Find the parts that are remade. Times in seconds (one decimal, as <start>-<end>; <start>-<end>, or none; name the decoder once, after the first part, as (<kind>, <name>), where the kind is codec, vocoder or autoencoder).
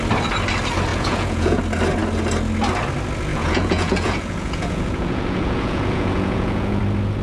0.9-1.6 (vocoder, Vocos); 3.3-6.8